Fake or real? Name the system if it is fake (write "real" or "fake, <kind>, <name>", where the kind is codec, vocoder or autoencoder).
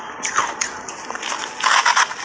real